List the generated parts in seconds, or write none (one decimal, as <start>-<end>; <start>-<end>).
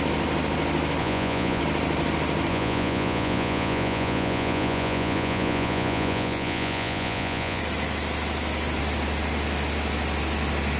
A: 1.0-1.6; 2.5-7.6